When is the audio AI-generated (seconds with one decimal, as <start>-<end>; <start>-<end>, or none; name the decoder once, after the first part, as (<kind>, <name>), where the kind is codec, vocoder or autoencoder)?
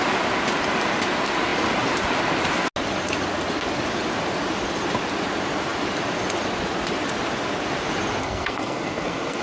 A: 8.2-9.4 (codec, SNAC)